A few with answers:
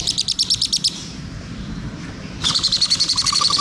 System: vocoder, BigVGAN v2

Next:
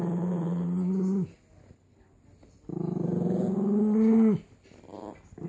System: none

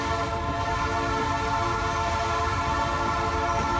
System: none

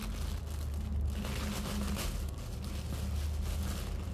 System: none